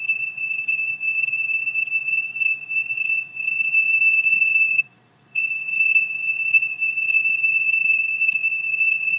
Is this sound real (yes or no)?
no